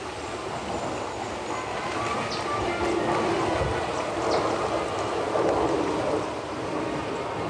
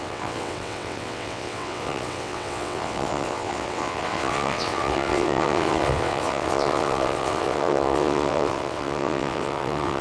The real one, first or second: first